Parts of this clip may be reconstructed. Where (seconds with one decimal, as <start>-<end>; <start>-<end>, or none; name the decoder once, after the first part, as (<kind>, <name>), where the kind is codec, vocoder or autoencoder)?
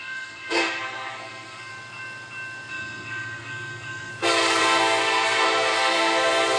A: 0.0-1.7 (codec, SNAC); 2.7-4.1; 4.6-6.6